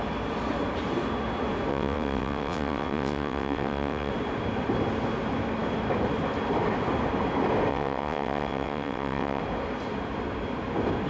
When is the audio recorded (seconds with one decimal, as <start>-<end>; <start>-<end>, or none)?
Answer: 0.0-1.7; 4.1-7.7; 9.4-11.1